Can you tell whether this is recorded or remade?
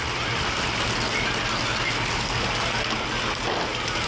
recorded